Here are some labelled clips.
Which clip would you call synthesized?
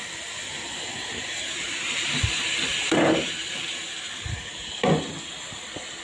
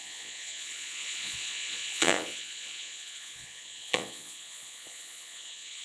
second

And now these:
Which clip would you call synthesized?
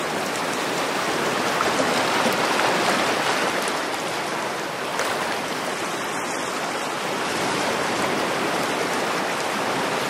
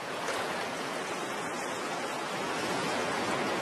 second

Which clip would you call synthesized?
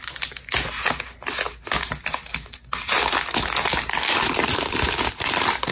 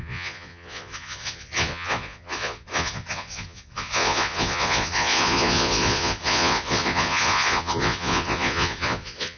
second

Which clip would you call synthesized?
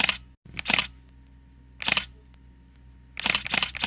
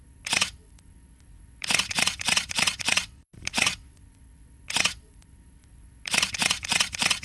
second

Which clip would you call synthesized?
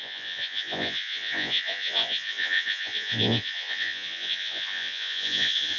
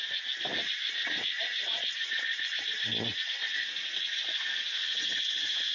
first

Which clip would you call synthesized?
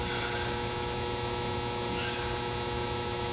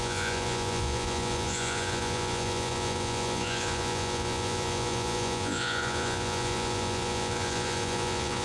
second